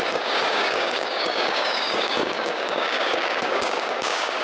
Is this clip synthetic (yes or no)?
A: yes